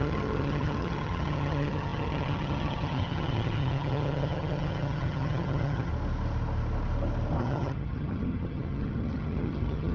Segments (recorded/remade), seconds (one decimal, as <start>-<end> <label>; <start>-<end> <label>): 0.0-5.9 remade; 5.9-7.4 recorded; 7.4-9.9 remade